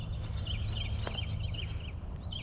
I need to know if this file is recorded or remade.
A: recorded